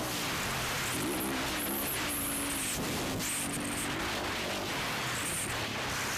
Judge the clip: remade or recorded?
recorded